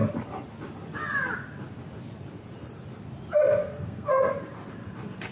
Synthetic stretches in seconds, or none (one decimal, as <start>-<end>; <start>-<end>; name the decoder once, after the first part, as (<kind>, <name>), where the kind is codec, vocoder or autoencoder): 3.6-4.3 (codec, SNAC)